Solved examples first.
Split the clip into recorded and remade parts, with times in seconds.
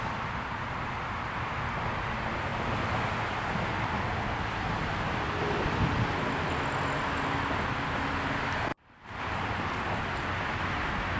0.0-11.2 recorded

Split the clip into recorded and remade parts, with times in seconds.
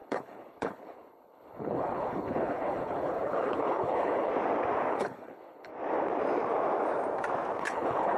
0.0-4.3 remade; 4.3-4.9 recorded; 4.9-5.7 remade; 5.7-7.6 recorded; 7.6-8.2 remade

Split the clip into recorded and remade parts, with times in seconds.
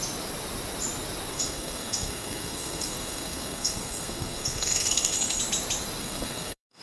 0.0-1.3 recorded; 1.3-5.4 remade; 5.4-6.0 recorded; 6.0-6.8 remade